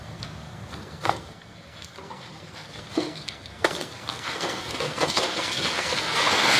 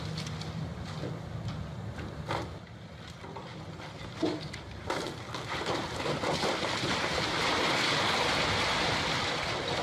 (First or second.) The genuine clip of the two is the second